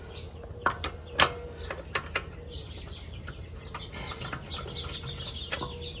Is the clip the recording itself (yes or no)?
yes